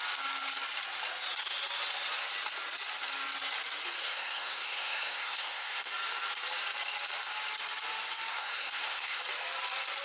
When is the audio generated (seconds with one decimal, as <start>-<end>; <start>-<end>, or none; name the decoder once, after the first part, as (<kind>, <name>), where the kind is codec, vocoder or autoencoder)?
4.0-5.9 (codec, SNAC); 8.3-9.2